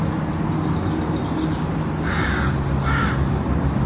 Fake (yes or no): no